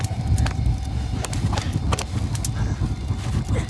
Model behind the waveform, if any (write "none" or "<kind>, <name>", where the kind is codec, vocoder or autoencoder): none